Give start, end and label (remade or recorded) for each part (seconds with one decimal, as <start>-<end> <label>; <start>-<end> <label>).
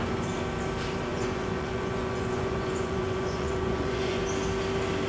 0.0-1.1 recorded; 1.1-4.2 remade; 4.2-5.1 recorded